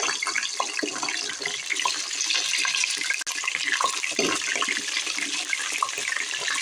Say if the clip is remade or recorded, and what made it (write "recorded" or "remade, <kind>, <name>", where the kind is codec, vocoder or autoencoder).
recorded